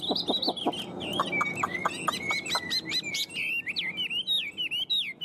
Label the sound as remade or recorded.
recorded